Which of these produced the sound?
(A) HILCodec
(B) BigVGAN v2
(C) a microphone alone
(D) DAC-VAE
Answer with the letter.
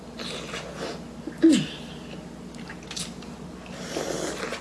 C